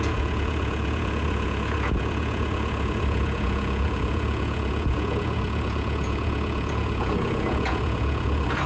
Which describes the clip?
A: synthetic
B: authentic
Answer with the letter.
A